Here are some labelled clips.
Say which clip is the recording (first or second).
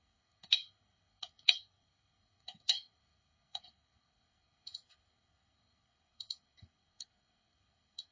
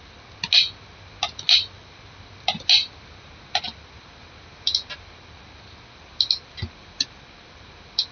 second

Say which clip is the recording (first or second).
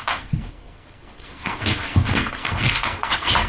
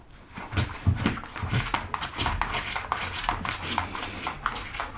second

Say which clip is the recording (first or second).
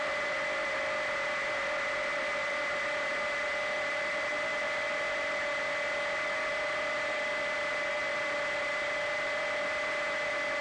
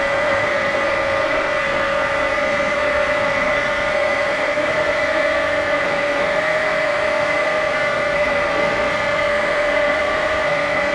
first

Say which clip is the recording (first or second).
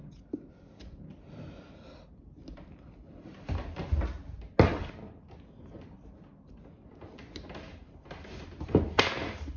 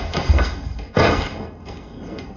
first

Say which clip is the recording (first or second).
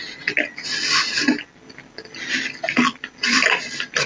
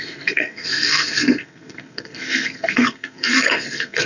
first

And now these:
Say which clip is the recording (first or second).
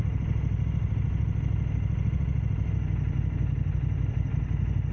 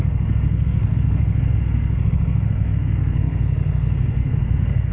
first